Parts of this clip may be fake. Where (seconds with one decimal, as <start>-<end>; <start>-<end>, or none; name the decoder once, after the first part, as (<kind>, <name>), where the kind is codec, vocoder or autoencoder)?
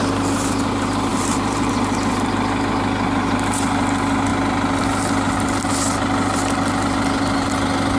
1.1-1.7 (vocoder, BigVGAN v2)